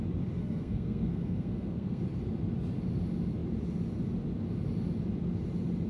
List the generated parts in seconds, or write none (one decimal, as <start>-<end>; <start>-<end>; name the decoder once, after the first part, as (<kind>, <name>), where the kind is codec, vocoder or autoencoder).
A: 0.4-2.0 (codec, SNAC)